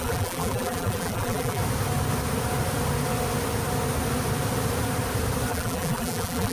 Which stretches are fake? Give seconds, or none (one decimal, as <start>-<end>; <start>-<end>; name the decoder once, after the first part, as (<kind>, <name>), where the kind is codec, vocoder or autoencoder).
0.0-1.6 (vocoder, BigVGAN v2); 5.5-6.5

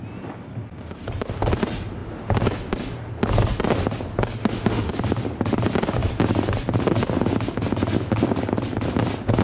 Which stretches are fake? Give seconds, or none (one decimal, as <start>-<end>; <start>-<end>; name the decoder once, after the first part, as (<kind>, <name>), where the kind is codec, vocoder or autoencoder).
4.4-4.9 (autoencoder, DAC-VAE)

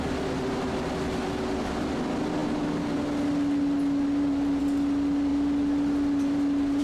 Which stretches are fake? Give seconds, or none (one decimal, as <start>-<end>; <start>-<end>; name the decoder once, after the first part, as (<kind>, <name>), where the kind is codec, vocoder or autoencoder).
none

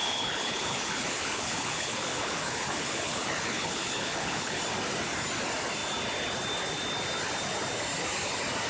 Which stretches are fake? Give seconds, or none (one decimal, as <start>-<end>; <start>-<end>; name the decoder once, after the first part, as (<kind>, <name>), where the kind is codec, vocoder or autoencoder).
0.0-4.6 (codec, HILCodec)

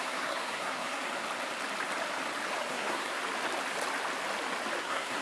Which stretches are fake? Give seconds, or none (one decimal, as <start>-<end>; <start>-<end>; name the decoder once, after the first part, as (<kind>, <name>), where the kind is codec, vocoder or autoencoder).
0.0-1.1 (codec, SNAC); 2.7-3.2; 4.8-5.2